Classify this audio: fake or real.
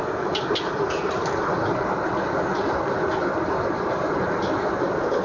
real